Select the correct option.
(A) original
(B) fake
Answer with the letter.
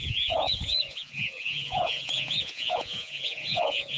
B